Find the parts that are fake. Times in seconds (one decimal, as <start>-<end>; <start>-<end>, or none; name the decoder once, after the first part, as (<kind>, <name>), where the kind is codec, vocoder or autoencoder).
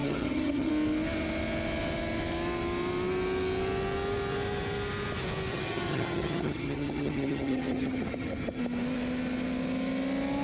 0.0-0.7 (vocoder, HiFi-GAN); 5.5-8.6